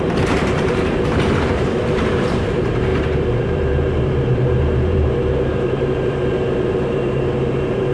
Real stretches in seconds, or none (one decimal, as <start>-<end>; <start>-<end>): none